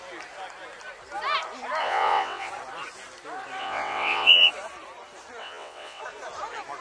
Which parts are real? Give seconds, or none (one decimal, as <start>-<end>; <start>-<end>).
0.0-1.8; 2.5-3.6; 4.5-5.4; 6.0-6.8